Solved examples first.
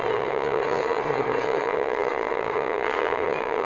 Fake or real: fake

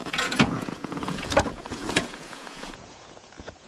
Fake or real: fake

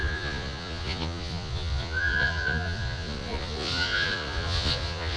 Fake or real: fake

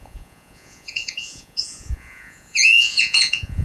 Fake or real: fake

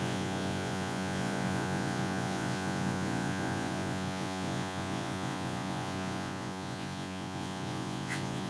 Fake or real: fake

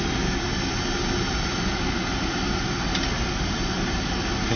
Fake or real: real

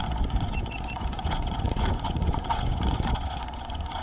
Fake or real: fake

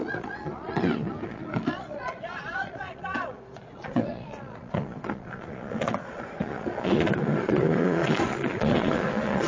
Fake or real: fake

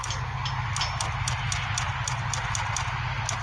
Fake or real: real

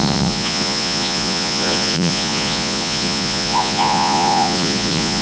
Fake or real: fake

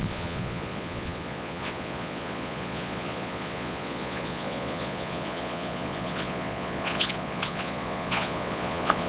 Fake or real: fake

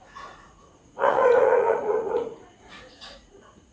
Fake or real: fake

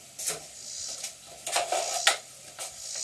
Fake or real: real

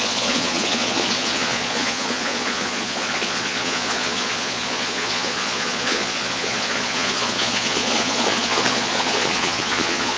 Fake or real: fake